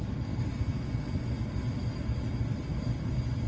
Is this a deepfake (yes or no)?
no